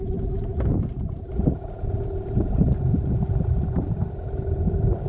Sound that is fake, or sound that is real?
real